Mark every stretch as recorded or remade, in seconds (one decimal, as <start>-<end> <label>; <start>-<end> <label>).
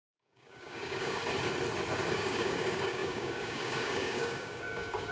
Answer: 0.0-1.2 remade; 1.2-2.1 recorded; 2.1-5.1 remade